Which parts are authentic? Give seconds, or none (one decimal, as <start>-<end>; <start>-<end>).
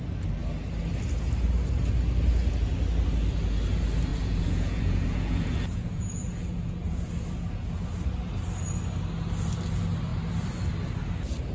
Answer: 0.0-4.1; 7.0-11.5